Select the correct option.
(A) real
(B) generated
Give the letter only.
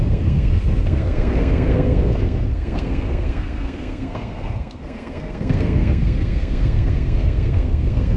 B